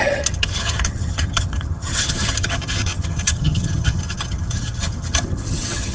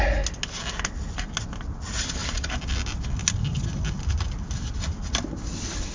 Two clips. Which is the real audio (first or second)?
second